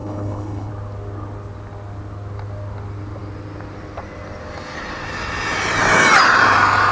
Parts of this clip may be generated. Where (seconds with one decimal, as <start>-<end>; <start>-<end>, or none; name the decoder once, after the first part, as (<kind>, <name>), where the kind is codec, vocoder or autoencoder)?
0.0-0.7 (codec, HILCodec)